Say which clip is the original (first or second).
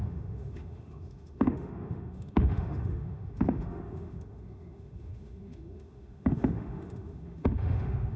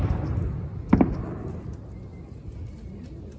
second